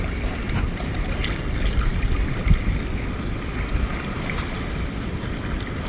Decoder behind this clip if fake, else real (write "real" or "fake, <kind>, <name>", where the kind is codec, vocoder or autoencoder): real